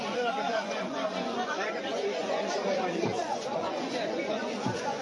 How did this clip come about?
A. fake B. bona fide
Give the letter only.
A